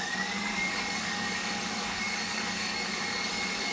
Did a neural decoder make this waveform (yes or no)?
yes